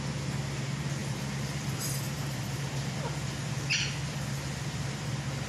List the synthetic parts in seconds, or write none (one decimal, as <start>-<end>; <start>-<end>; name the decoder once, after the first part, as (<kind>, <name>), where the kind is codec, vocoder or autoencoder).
1.0-3.0 (vocoder, BigVGAN v2)